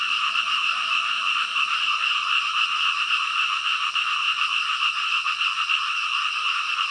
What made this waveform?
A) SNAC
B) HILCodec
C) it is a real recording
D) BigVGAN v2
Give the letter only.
D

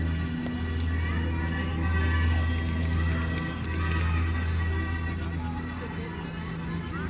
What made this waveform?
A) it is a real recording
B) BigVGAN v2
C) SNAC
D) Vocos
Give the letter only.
A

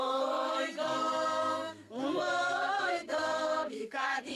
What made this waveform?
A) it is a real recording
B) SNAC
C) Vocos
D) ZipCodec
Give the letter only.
B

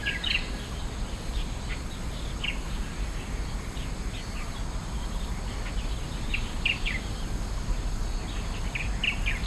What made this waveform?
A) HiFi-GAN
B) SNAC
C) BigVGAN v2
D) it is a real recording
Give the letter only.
D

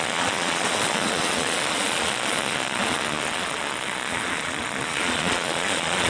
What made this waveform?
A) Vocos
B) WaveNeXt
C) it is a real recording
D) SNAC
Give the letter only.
A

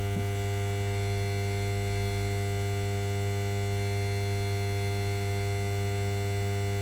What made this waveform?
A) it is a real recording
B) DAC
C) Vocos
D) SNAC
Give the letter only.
A